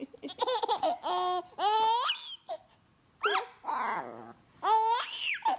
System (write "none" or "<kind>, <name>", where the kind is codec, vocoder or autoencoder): none